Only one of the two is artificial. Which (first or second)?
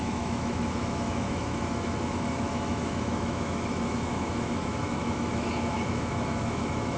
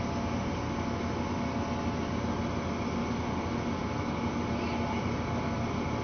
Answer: first